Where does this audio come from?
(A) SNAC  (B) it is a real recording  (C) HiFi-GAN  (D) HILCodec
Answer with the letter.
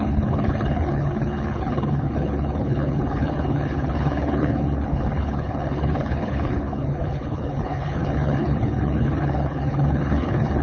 D